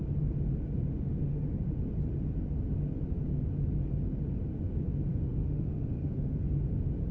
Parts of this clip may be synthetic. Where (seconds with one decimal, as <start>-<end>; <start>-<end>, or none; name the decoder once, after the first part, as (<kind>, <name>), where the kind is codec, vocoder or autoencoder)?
0.9-1.8 (autoencoder, DAC-VAE); 5.1-6.4